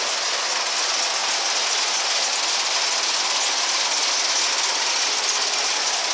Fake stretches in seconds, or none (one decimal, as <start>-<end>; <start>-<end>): none